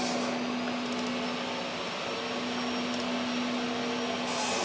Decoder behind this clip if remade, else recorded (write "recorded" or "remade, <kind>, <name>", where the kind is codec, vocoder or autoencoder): recorded